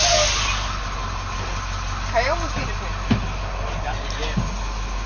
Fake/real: real